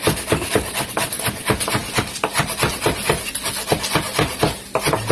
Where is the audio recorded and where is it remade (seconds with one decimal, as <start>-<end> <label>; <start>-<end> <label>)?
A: 0.0-5.1 recorded